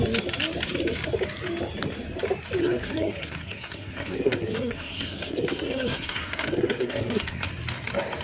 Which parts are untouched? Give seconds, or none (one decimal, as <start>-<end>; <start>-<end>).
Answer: 0.0-2.6; 7.5-8.2